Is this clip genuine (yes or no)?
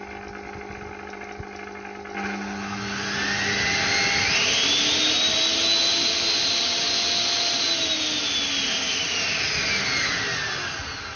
yes